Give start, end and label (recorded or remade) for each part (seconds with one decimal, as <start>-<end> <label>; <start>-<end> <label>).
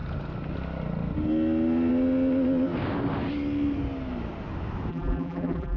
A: 0.0-4.9 recorded; 4.9-5.8 remade